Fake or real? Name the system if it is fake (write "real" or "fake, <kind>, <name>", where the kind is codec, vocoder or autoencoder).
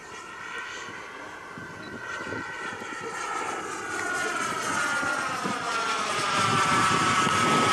real